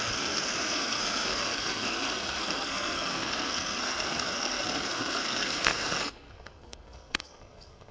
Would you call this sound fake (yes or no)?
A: yes